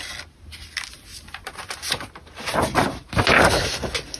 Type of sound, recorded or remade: recorded